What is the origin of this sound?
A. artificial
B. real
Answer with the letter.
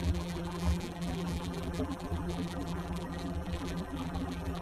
A